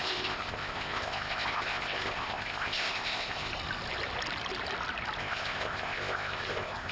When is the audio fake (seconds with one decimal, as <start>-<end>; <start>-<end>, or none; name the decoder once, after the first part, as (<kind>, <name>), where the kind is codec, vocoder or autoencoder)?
0.0-3.5 (codec, ZipCodec); 5.2-6.9